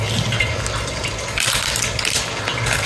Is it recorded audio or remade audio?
recorded